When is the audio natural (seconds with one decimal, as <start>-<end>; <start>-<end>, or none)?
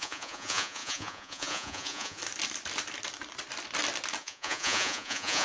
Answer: 2.2-4.2